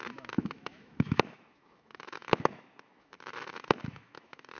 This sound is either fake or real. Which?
fake